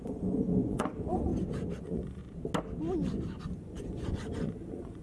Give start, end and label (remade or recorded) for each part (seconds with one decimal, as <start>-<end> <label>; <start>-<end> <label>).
0.0-1.3 remade; 1.3-1.8 recorded; 1.8-2.2 remade; 2.2-3.4 recorded; 3.4-5.0 remade